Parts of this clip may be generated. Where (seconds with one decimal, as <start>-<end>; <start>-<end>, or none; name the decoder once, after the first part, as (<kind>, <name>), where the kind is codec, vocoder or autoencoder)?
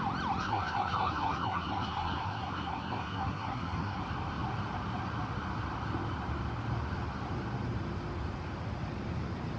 0.4-4.0 (codec, SNAC)